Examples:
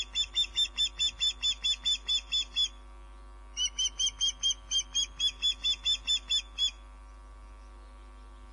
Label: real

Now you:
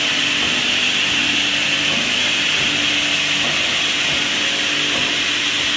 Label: real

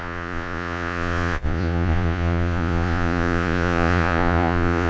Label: fake